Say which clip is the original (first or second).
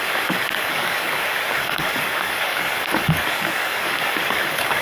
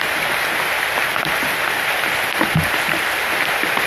second